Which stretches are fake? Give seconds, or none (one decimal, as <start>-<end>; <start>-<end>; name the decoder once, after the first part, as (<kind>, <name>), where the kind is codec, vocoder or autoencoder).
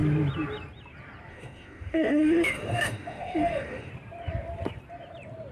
1.3-3.9 (autoencoder, DAC-VAE)